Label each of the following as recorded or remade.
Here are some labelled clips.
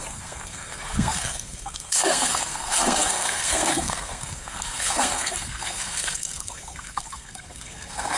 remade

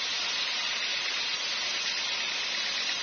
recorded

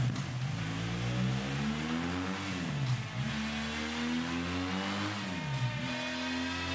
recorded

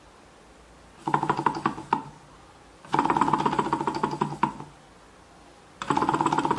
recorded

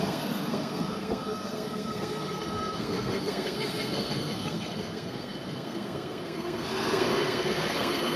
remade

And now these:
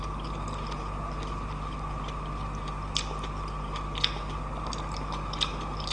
recorded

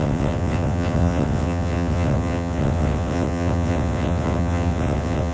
remade